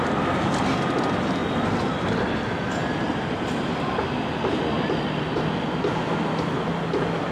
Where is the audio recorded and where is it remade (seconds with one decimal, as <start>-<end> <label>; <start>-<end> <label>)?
0.0-7.3 recorded

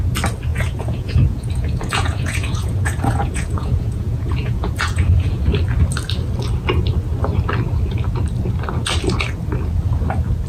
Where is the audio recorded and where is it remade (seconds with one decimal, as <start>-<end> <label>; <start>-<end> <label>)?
0.0-0.5 recorded; 0.5-5.4 remade; 5.4-10.5 recorded